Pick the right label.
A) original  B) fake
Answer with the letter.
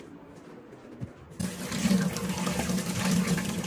A